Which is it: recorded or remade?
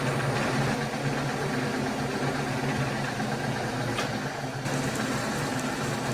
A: recorded